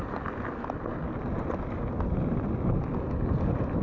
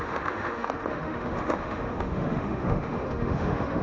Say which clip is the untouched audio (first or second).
first